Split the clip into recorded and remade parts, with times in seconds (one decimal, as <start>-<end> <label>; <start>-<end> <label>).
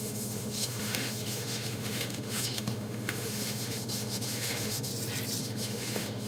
0.0-4.9 remade; 4.9-5.4 recorded; 5.4-6.3 remade